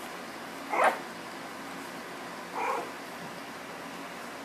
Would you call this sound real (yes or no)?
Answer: yes